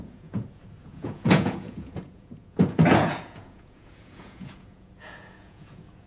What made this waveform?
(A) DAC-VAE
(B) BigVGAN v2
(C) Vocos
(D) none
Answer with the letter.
C